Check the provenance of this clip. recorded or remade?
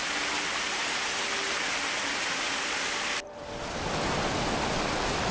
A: remade